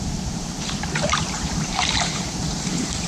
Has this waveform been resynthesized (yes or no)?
yes